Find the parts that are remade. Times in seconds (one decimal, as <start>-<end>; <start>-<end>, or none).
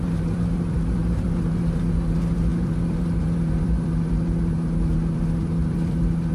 0.0-6.3